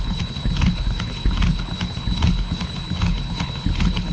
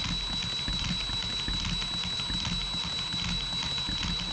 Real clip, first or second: second